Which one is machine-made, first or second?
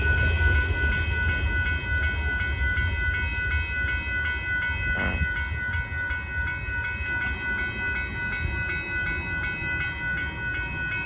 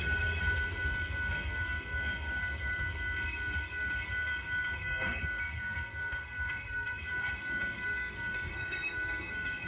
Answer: second